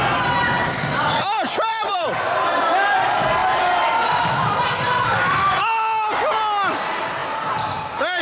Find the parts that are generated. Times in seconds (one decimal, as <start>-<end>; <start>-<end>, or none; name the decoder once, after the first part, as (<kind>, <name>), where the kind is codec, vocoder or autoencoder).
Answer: 1.7-2.4 (vocoder, BigVGAN v2)